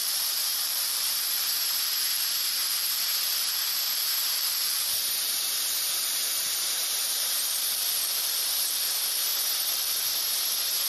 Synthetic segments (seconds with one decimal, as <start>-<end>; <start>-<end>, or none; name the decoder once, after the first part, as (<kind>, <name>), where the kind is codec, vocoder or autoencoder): 0.0-9.3 (vocoder, BigVGAN v2)